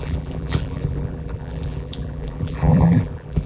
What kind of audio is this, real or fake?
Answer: fake